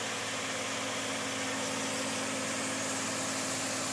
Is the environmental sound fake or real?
real